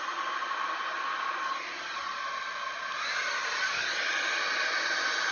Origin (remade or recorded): recorded